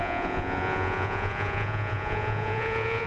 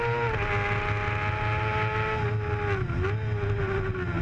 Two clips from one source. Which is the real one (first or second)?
second